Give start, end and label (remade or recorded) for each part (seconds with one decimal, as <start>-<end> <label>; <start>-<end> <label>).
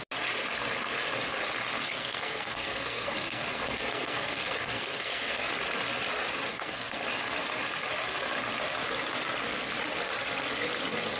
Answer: 0.0-1.8 recorded; 1.8-5.5 remade; 5.5-6.5 recorded; 6.5-7.0 remade; 7.0-11.2 recorded